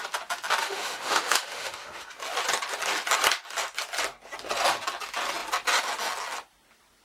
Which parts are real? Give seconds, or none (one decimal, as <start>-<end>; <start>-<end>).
0.0-0.6; 2.1-7.0

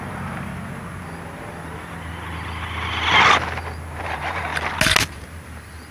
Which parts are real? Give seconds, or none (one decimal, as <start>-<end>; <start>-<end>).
0.5-4.0; 4.5-5.1

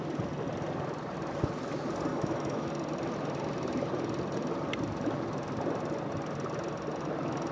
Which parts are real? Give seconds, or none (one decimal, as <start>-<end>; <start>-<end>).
0.0-2.1; 2.7-7.5

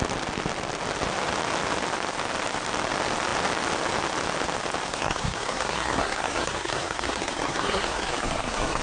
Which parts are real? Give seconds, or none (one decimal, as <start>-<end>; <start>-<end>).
0.0-4.9

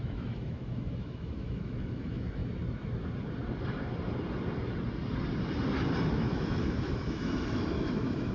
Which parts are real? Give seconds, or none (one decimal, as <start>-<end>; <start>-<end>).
2.4-6.1

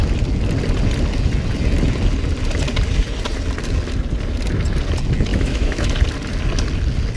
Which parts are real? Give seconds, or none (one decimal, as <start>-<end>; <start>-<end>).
0.0-5.3; 5.9-7.2

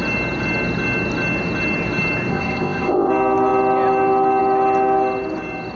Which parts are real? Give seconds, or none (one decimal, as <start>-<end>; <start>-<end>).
0.0-2.3; 3.1-5.8